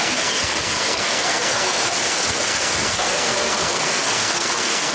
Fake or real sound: fake